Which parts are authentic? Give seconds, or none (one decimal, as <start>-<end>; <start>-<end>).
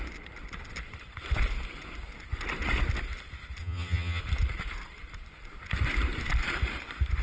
0.0-3.6; 4.2-7.2